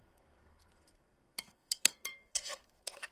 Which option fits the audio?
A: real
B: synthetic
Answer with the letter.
B